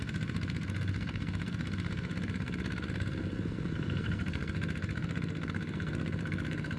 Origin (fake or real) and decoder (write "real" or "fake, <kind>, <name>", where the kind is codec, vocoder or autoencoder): fake, codec, SNAC